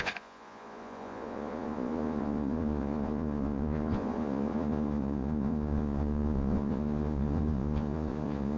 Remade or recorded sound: remade